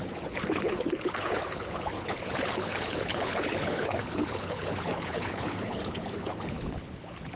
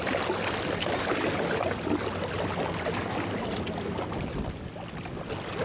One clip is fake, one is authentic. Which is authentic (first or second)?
second